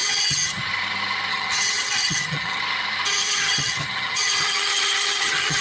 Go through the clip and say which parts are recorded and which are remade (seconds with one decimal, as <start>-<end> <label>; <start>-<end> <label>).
0.0-0.6 remade; 0.6-1.3 recorded; 1.3-2.6 remade; 2.6-3.2 recorded; 3.2-5.6 remade